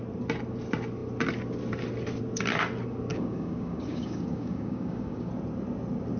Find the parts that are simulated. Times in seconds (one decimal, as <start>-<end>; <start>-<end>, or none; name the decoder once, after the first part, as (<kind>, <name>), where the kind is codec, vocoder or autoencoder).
3.1-5.3 (codec, DAC)